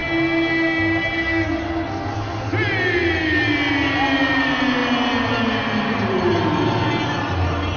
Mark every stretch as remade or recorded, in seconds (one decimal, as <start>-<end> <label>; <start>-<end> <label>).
0.0-7.8 recorded